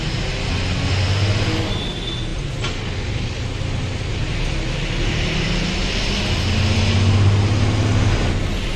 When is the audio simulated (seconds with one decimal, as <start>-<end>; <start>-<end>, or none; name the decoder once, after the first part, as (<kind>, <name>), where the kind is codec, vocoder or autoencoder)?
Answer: none